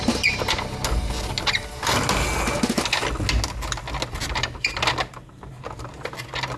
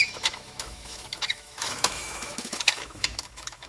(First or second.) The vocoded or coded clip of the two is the second